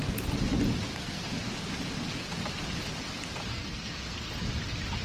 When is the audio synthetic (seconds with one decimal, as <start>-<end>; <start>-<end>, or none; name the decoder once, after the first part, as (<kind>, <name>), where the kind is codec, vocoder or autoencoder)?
0.9-1.4 (codec, SNAC); 3.5-4.3